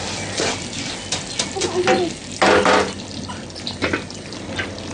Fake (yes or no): no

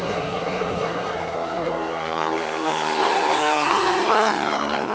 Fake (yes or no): yes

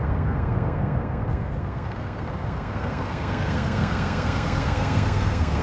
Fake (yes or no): yes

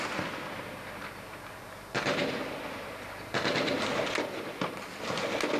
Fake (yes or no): no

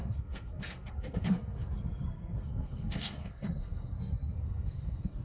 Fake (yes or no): yes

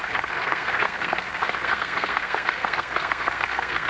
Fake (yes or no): yes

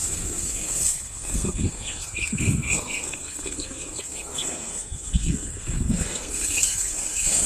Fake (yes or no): yes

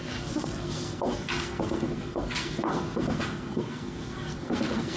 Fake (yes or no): yes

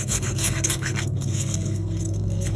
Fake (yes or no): yes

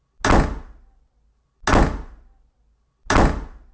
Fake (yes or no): no